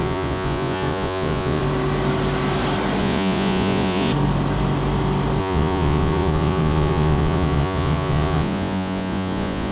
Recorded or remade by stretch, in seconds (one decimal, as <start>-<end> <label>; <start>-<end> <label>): 0.0-1.6 remade; 1.6-3.0 recorded; 3.0-4.1 remade; 4.1-5.4 recorded; 5.4-9.7 remade